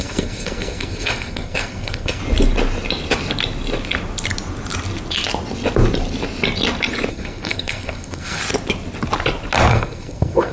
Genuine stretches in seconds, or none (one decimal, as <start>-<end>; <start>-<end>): 2.2-7.1; 8.4-9.7